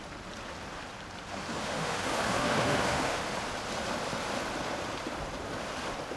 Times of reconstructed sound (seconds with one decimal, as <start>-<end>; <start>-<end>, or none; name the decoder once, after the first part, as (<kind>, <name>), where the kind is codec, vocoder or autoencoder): 1.6-3.2 (autoencoder, DAC-VAE)